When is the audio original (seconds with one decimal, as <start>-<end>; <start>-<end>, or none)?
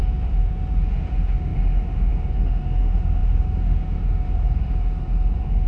none